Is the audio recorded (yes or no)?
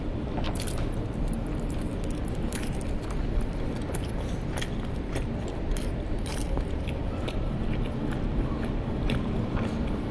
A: no